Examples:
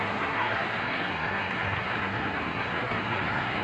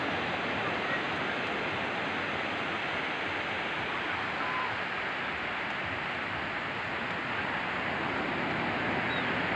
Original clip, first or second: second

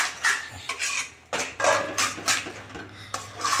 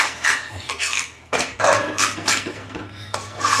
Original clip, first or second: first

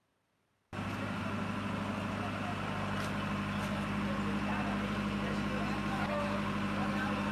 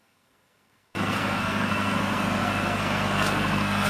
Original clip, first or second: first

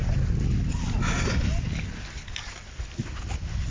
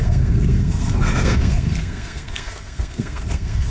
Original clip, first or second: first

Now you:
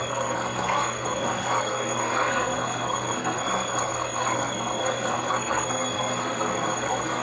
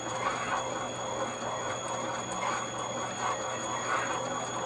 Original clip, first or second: second